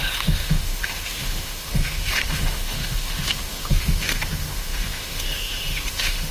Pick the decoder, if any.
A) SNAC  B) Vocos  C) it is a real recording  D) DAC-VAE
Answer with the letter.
D